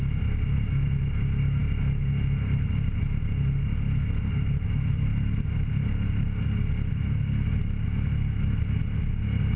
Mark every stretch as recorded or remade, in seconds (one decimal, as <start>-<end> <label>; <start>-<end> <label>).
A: 0.0-9.6 recorded